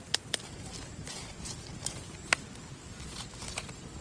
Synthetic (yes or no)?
no